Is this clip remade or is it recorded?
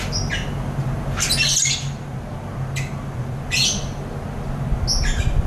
recorded